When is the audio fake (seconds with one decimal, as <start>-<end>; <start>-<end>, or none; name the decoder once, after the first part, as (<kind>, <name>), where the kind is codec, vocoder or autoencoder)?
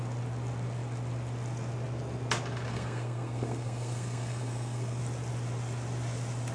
2.7-5.0 (codec, SNAC)